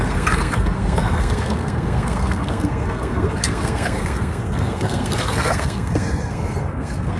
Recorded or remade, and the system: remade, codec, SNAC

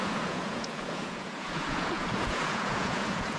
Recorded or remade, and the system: remade, vocoder, Vocos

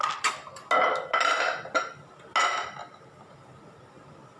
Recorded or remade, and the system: recorded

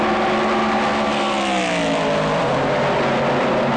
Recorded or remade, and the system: recorded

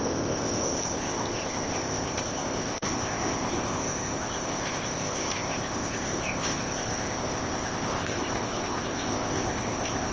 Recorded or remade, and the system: remade, codec, ZipCodec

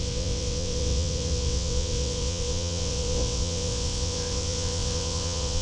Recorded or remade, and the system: remade, vocoder, WaveNeXt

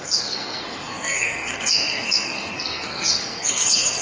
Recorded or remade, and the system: remade, codec, SNAC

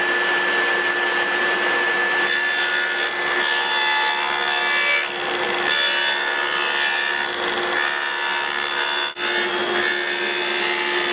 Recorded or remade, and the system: recorded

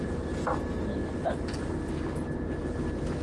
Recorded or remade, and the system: recorded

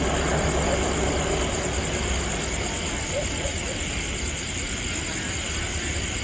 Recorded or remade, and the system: recorded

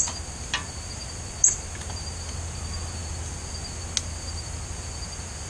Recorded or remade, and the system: recorded